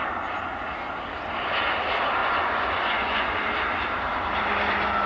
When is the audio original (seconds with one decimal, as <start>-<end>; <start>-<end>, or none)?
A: 0.0-2.2; 3.4-5.1